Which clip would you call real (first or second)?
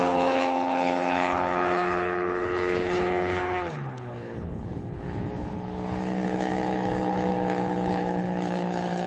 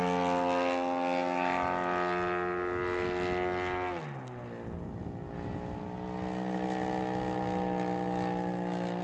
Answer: second